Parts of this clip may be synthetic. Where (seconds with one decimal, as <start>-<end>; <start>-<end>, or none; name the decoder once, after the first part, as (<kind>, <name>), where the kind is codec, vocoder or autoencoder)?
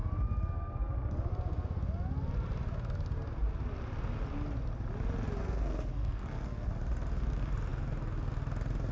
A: 5.4-6.7 (codec, SNAC)